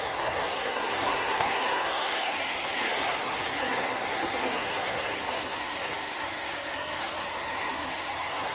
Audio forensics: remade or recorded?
remade